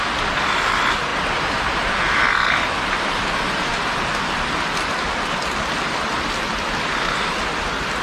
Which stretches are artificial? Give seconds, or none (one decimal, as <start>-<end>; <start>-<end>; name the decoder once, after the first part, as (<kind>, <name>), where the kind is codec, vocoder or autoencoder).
none